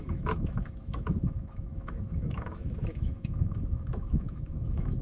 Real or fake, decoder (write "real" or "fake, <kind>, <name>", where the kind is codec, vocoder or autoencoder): fake, autoencoder, DAC-VAE